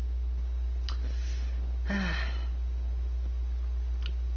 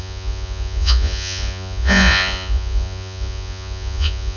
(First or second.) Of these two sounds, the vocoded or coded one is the second